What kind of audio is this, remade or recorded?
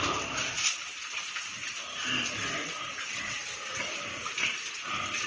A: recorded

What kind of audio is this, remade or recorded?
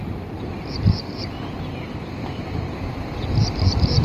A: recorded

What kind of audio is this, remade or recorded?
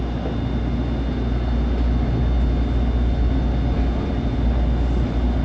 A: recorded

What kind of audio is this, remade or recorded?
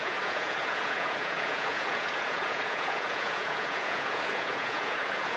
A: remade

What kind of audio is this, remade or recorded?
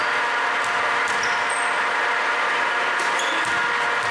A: recorded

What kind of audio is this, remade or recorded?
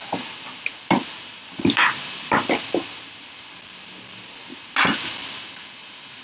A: recorded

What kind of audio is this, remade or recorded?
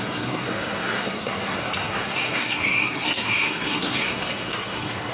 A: remade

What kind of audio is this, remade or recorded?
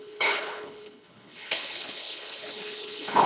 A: remade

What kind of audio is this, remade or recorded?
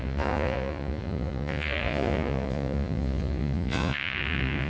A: remade